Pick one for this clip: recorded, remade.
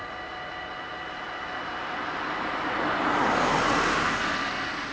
recorded